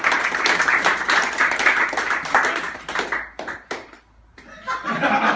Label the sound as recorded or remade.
recorded